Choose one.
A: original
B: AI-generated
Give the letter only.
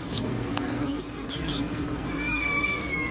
B